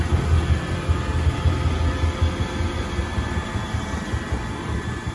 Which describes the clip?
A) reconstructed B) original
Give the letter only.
B